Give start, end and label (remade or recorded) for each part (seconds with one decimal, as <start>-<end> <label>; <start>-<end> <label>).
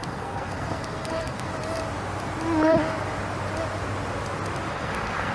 0.0-1.5 remade; 1.5-4.7 recorded; 4.7-5.3 remade